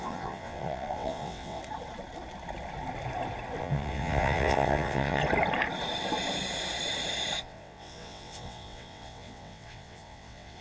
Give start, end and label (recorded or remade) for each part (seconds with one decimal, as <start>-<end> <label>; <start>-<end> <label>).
0.0-1.6 remade; 1.6-3.6 recorded; 3.6-5.2 remade; 5.2-7.4 recorded; 7.4-10.6 remade